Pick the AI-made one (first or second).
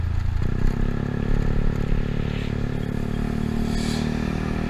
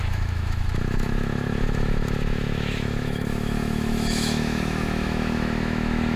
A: second